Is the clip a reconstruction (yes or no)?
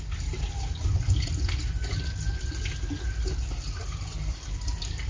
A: no